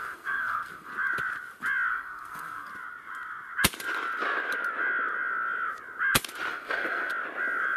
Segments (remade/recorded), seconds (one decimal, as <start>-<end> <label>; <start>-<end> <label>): 0.0-0.9 remade; 0.9-1.9 recorded; 1.9-2.7 remade; 2.7-6.5 recorded; 6.5-7.1 remade; 7.1-7.8 recorded